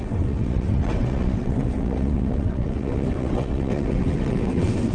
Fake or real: fake